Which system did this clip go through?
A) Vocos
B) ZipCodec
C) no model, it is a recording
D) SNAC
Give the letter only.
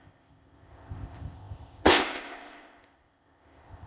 B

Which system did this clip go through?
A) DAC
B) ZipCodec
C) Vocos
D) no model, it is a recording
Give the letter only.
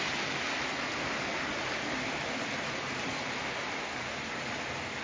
D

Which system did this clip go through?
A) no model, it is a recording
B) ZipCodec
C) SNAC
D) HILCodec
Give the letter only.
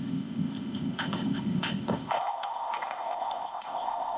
B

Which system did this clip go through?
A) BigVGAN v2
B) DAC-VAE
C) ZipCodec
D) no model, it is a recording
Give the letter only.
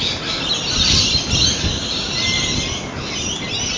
D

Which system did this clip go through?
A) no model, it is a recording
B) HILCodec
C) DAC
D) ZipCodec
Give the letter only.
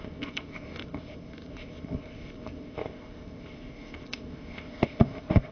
D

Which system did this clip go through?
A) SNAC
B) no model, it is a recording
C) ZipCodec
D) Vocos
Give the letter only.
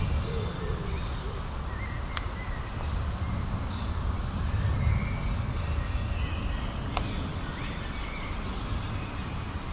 B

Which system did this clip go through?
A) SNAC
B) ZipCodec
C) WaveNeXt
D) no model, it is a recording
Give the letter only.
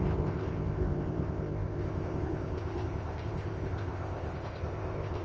B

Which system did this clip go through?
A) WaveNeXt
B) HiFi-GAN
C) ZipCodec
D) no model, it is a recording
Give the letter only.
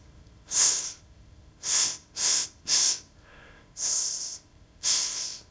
C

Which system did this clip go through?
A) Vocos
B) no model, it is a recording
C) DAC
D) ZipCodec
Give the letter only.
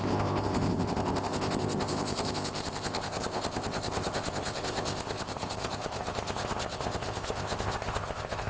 D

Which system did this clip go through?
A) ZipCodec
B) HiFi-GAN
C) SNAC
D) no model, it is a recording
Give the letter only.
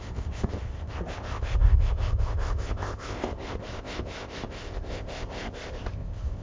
A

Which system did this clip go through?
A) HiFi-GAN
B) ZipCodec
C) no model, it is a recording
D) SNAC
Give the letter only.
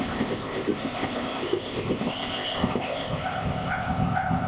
B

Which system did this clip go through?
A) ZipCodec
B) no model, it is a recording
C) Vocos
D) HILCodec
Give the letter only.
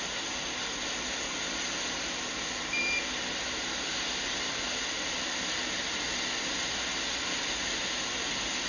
B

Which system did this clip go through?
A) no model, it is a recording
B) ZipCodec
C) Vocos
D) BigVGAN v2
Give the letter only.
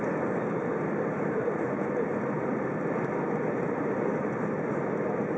A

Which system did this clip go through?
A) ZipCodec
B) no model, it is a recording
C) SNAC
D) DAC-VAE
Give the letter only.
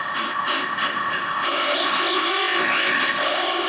A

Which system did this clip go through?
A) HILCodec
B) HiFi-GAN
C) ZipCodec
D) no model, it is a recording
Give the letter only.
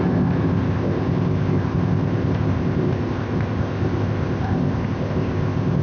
C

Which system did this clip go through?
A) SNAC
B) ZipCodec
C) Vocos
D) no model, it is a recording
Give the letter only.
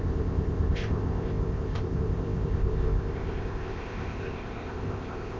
B